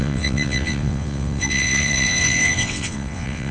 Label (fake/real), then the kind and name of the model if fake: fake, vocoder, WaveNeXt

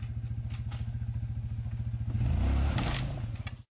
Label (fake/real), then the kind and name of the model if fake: real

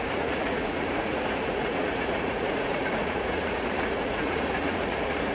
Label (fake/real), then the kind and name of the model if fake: fake, vocoder, Vocos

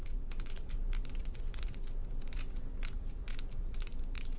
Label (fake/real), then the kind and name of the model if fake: fake, vocoder, BigVGAN v2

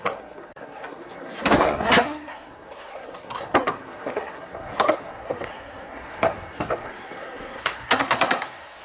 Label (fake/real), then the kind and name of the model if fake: fake, codec, SNAC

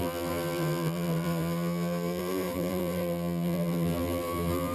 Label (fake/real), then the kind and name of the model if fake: fake, vocoder, BigVGAN v2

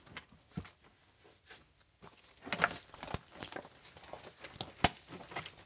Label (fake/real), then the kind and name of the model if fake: real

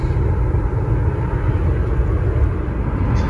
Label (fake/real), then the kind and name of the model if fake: real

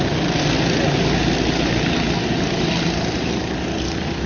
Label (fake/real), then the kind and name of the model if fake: real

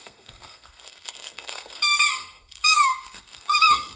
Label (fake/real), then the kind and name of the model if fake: fake, codec, SNAC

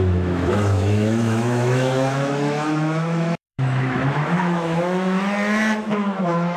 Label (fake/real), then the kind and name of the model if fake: fake, autoencoder, DAC-VAE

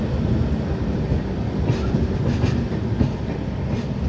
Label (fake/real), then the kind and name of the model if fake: real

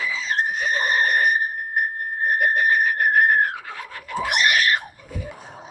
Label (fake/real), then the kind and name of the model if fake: fake, codec, HILCodec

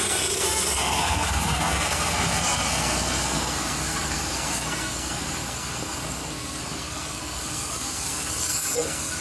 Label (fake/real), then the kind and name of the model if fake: fake, codec, SNAC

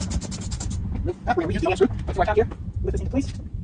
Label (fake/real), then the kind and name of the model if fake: fake, vocoder, BigVGAN v2